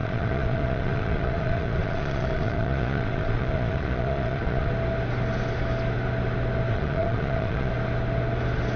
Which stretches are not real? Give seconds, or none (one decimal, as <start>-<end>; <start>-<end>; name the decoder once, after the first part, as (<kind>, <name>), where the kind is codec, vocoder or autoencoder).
0.0-4.7 (vocoder, Vocos); 6.7-7.7